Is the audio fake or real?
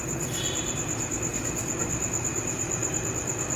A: real